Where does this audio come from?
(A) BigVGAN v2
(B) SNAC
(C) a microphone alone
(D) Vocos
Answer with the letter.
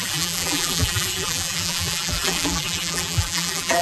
A